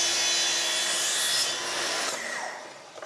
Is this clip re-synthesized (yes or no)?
no